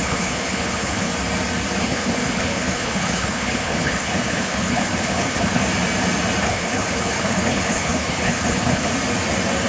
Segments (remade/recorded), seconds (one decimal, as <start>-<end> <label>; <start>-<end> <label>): 0.0-1.1 remade; 1.1-1.8 recorded; 1.8-5.6 remade; 5.6-6.4 recorded; 6.4-8.9 remade; 8.9-9.7 recorded